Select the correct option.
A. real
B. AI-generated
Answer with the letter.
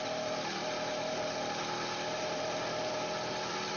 A